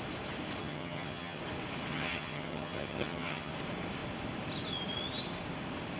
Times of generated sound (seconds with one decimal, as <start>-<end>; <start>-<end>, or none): 0.6-1.4; 1.9-3.5